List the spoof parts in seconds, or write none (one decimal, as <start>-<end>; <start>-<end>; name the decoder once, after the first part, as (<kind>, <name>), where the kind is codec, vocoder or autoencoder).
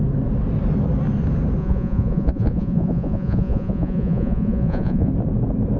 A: 1.6-5.1 (vocoder, Vocos)